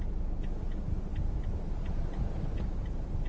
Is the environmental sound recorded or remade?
recorded